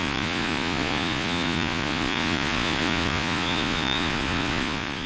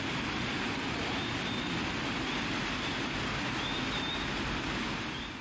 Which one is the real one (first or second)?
second